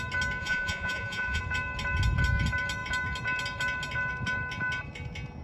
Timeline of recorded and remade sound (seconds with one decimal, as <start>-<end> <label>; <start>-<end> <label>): 0.0-0.4 recorded; 0.4-1.4 remade; 1.4-5.4 recorded